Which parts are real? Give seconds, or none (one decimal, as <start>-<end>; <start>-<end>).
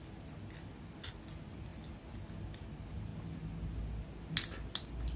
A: 0.0-5.2